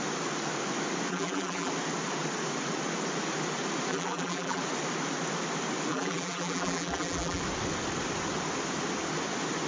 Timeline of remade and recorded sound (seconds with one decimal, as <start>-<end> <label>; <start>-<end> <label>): 0.0-1.1 recorded; 1.1-1.7 remade; 1.7-3.9 recorded; 3.9-4.6 remade; 4.6-5.9 recorded; 5.9-7.4 remade; 7.4-9.7 recorded